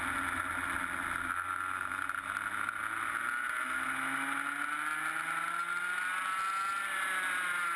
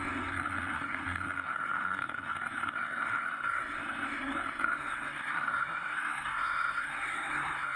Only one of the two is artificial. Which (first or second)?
second